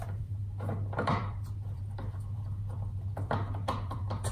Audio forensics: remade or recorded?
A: remade